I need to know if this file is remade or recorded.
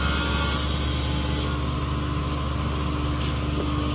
recorded